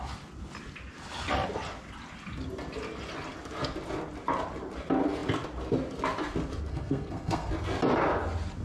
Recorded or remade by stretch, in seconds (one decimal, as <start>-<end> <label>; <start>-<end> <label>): 0.0-6.7 recorded; 6.7-7.5 remade; 7.5-8.6 recorded